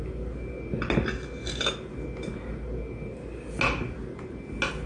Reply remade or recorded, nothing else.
recorded